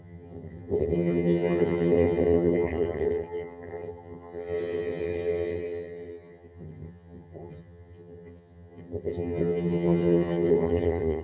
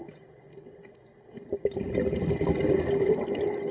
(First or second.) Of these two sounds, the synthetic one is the first